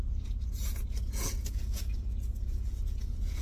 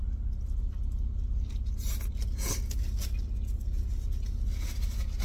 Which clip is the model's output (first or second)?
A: first